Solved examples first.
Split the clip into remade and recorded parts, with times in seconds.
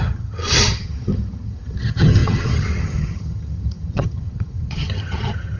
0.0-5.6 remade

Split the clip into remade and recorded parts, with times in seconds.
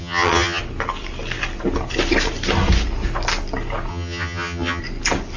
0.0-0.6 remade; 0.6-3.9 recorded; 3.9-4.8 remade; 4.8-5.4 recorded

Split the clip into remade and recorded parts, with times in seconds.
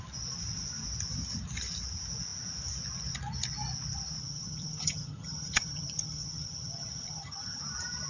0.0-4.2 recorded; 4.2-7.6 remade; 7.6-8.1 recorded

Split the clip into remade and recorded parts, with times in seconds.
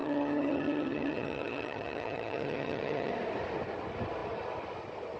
0.0-3.1 remade; 3.1-5.2 recorded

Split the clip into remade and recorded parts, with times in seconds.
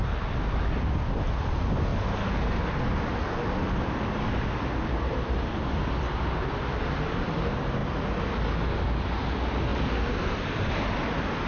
0.0-11.5 recorded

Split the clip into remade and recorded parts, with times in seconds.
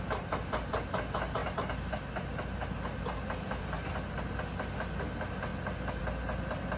0.0-6.8 recorded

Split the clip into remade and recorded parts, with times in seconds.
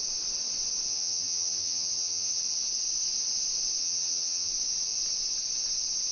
0.0-0.9 recorded; 0.9-2.4 remade; 2.4-3.8 recorded; 3.8-4.5 remade; 4.5-6.1 recorded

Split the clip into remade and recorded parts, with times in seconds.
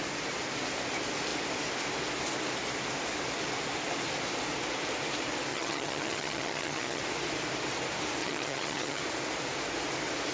0.0-5.5 recorded; 5.5-7.0 remade; 7.0-8.2 recorded; 8.2-9.0 remade; 9.0-10.3 recorded